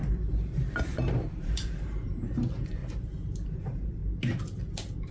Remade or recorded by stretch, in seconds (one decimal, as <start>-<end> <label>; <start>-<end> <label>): 0.0-0.8 recorded; 0.8-2.8 remade; 2.8-3.6 recorded; 3.6-4.0 remade; 4.0-5.1 recorded